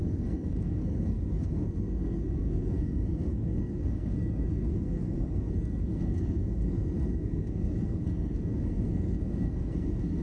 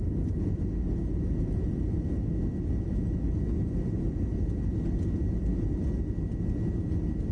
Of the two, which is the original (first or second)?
second